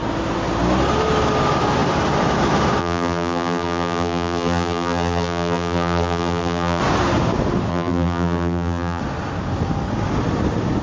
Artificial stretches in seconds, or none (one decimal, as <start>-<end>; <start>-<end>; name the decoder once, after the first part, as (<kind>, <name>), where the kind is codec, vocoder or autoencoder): 2.8-6.8 (vocoder, BigVGAN v2); 7.7-9.0